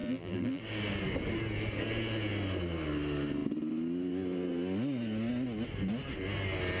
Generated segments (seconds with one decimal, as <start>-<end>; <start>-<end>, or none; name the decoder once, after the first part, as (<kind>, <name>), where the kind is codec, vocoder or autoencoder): 0.0-0.6 (vocoder, BigVGAN v2)